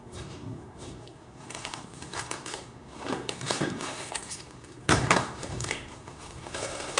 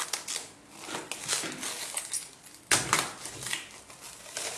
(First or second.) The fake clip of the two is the first